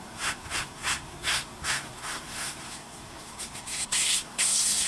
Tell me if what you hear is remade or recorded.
remade